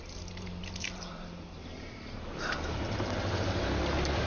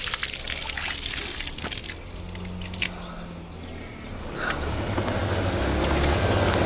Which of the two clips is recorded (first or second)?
second